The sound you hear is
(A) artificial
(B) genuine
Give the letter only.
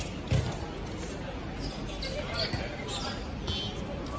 B